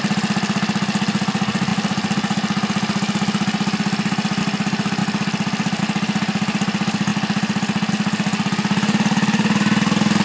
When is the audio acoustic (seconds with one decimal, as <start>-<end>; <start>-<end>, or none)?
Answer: 0.0-10.2